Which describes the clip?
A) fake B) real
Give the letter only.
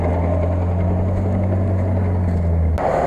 B